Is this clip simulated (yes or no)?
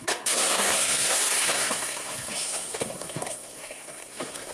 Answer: yes